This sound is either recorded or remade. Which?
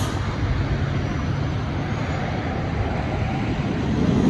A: recorded